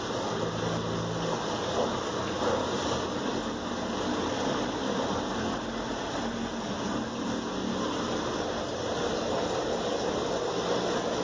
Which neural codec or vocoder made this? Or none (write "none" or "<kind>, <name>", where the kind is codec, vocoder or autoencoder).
none